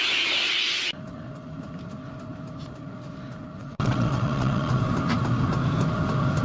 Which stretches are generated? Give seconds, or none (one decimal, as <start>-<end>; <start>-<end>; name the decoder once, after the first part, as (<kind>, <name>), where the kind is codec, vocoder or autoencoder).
3.6-4.8 (vocoder, WaveNeXt)

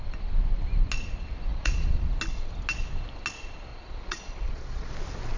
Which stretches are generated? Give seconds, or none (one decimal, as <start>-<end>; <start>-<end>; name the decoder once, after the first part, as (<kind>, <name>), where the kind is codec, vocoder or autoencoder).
1.5-2.1 (vocoder, Vocos); 3.7-4.9

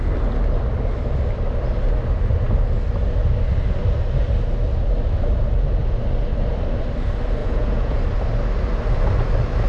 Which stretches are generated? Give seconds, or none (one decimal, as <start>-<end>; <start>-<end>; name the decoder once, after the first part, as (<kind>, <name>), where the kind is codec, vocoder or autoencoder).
7.4-8.0 (vocoder, Vocos)

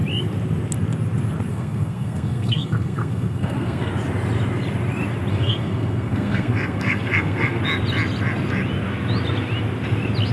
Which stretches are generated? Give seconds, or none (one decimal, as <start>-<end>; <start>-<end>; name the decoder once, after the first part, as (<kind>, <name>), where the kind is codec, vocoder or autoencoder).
1.5-3.9 (codec, SNAC); 5.3-7.6

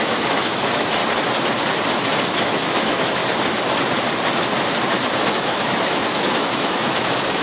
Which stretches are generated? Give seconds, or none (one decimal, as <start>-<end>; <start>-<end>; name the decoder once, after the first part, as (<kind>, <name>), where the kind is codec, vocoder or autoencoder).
0.0-1.0 (autoencoder, DAC-VAE); 2.3-3.2; 5.3-7.4